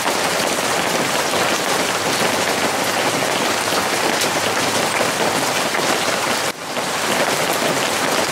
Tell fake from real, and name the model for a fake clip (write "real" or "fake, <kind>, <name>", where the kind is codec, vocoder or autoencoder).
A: real